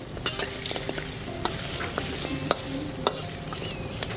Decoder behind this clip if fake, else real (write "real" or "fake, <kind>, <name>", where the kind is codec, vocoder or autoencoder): real